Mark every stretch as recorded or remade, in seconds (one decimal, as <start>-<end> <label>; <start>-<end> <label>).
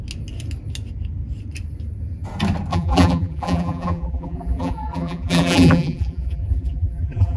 0.0-2.7 recorded; 2.7-7.4 remade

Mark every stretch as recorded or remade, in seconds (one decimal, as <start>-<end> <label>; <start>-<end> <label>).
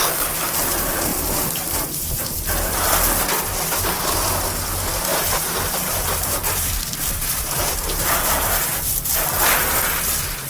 0.0-1.1 recorded; 1.1-2.2 remade; 2.2-5.1 recorded; 5.1-8.7 remade; 8.7-10.5 recorded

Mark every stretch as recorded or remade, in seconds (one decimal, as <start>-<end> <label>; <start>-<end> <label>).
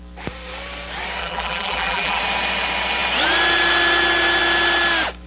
0.0-1.2 recorded; 1.2-2.2 remade; 2.2-5.3 recorded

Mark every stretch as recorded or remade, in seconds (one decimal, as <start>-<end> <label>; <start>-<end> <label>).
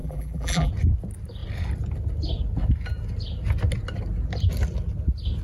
0.0-0.7 remade; 0.7-5.4 recorded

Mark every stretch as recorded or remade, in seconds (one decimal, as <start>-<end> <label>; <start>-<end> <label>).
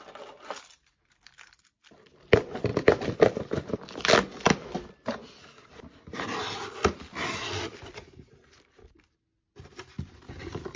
0.0-2.7 recorded; 2.7-4.2 remade; 4.2-10.8 recorded